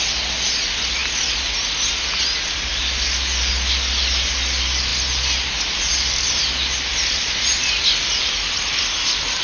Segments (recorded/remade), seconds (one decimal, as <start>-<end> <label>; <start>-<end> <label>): 0.0-9.4 recorded